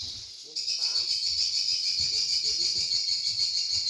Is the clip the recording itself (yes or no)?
no